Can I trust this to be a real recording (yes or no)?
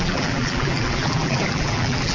no